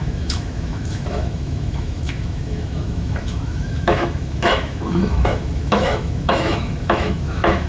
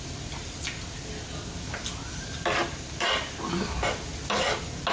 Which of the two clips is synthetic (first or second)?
first